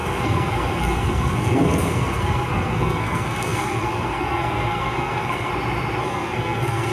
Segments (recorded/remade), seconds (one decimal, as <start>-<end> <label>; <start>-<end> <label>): 0.0-5.5 remade; 5.5-6.0 recorded; 6.0-6.9 remade